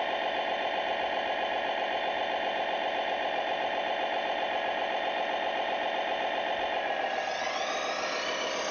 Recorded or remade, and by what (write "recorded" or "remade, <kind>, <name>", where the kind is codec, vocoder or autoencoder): recorded